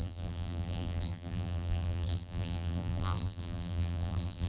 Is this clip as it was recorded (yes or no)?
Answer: no